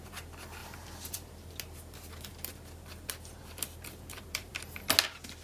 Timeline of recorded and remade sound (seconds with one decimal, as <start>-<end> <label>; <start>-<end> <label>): 0.0-0.6 recorded; 0.6-1.5 remade; 1.5-3.4 recorded; 3.4-4.5 remade; 4.5-5.4 recorded